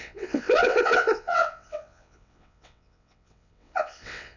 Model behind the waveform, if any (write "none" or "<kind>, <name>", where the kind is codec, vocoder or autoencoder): vocoder, WaveNeXt